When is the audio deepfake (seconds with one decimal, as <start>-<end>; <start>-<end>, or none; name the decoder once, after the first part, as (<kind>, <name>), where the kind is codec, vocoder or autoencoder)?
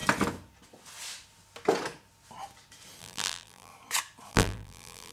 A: 3.0-3.7 (vocoder, BigVGAN v2); 4.3-5.1